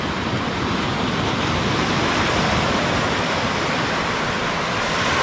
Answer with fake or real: real